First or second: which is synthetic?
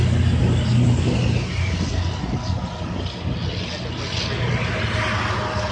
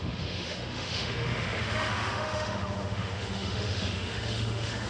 second